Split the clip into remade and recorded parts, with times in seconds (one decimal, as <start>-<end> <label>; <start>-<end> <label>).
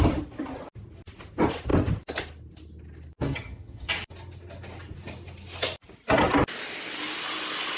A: 0.0-3.3 recorded; 3.3-3.9 remade; 3.9-7.8 recorded